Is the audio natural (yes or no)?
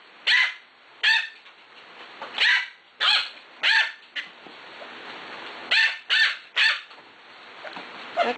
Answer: yes